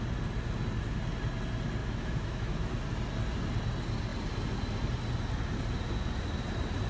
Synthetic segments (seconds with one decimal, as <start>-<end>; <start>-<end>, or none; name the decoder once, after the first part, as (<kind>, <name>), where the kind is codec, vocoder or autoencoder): 1.8-2.7 (autoencoder, DAC-VAE)